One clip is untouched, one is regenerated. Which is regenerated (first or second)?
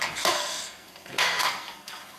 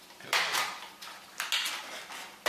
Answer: first